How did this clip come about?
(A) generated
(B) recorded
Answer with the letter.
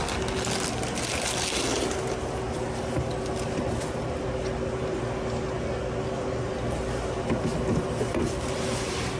B